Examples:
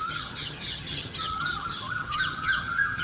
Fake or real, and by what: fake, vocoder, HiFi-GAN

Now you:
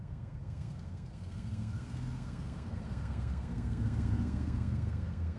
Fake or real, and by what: fake, codec, SNAC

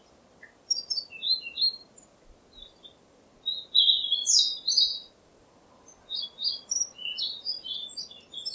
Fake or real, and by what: real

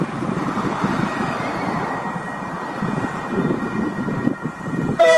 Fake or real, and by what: fake, vocoder, BigVGAN v2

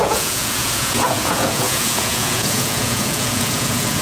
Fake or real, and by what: fake, vocoder, Vocos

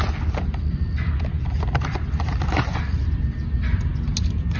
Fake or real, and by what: real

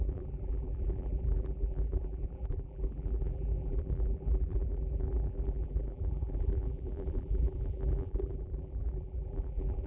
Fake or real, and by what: fake, vocoder, BigVGAN v2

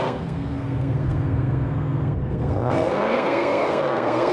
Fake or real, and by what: fake, codec, SNAC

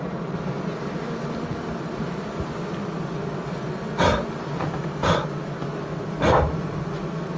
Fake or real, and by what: real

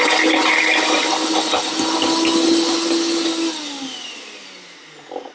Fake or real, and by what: real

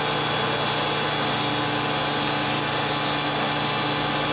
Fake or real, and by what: real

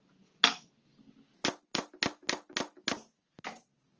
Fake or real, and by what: real